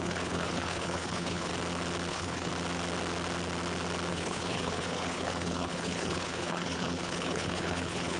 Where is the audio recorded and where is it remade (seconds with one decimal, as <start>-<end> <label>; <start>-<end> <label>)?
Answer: 0.0-1.5 remade; 1.5-2.1 recorded; 2.1-2.5 remade; 2.5-4.1 recorded; 4.1-8.2 remade